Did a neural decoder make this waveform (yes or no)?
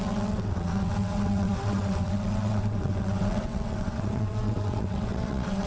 yes